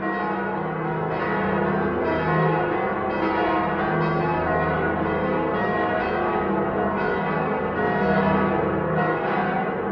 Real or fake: real